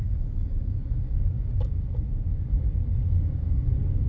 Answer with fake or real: fake